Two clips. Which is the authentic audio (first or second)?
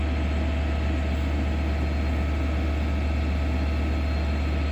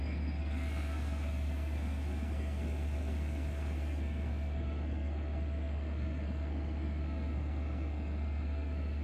first